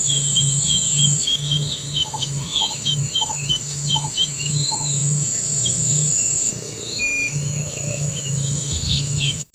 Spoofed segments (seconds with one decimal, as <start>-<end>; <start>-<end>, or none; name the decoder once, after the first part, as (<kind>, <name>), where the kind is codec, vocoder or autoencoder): 0.0-9.5 (autoencoder, DAC-VAE)

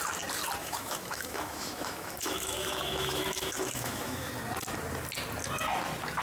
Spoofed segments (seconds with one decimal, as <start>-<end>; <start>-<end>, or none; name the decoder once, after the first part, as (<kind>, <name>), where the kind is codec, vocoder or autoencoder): 0.6-4.3 (autoencoder, DAC-VAE)